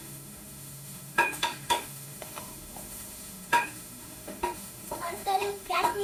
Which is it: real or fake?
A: fake